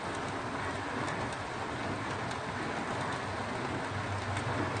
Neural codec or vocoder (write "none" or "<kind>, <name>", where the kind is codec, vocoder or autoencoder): none